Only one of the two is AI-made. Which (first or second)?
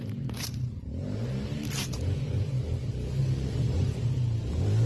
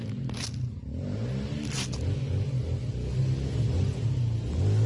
first